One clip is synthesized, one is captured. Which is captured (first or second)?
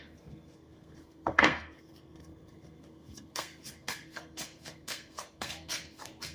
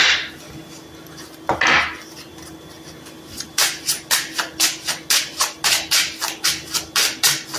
second